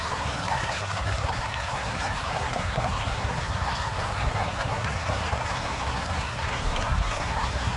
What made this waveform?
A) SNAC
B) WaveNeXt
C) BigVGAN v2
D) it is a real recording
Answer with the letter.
A